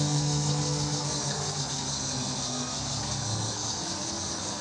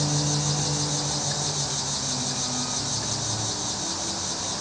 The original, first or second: second